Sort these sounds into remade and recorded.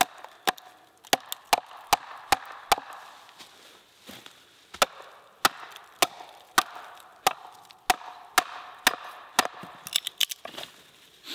recorded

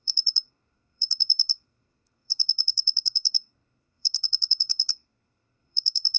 remade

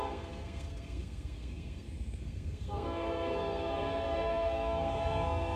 remade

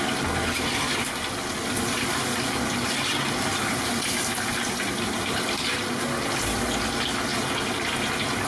recorded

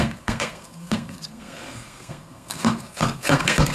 remade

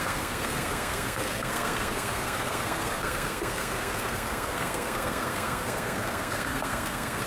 remade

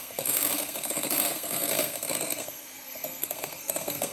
remade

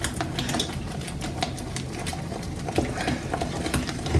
recorded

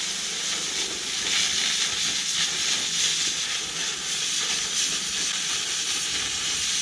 recorded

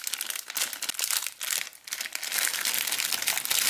recorded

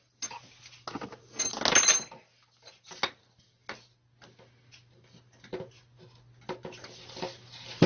recorded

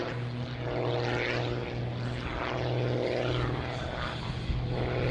recorded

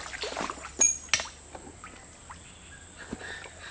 recorded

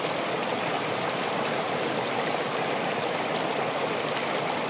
recorded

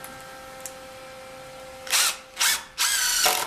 recorded